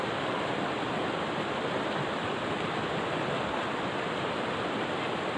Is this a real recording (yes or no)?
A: yes